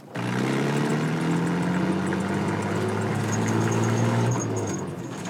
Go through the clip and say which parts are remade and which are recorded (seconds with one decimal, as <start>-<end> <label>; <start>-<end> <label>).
0.0-3.1 recorded; 3.1-5.3 remade